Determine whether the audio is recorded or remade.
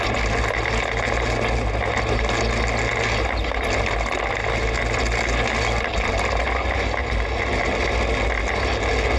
recorded